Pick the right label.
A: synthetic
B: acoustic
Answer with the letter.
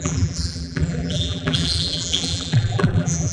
A